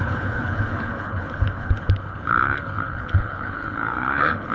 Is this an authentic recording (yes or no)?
no